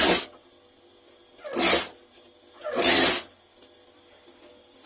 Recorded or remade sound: recorded